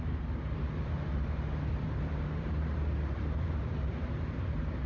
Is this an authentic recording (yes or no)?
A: no